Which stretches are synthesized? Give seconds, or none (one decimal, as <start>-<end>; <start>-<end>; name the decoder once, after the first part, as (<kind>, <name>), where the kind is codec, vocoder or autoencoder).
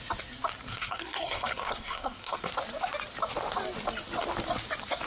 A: 0.7-2.5 (codec, SNAC)